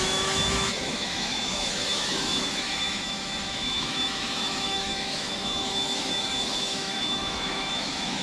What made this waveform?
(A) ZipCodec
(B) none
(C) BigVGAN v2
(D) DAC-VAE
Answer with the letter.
D